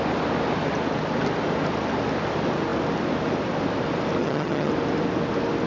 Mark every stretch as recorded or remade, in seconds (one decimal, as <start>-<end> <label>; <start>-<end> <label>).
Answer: 0.0-4.2 recorded; 4.2-4.7 remade; 4.7-5.7 recorded

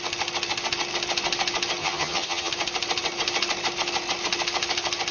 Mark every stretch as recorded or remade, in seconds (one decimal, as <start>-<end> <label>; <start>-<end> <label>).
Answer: 0.0-1.8 recorded; 1.8-2.5 remade; 2.5-5.1 recorded

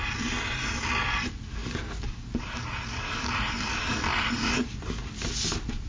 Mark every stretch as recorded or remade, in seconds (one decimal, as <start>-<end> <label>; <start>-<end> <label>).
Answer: 0.0-5.9 recorded